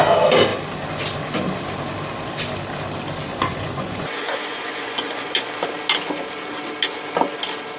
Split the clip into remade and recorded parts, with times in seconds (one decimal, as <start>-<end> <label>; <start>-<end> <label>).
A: 0.0-3.3 recorded; 3.3-5.5 remade; 5.5-7.8 recorded